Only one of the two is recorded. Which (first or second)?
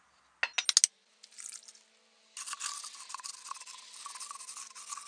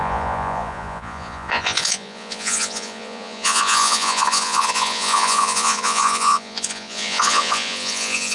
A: first